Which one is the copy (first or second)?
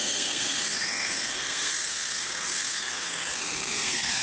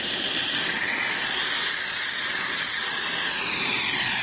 first